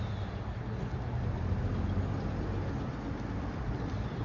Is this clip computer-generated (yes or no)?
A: no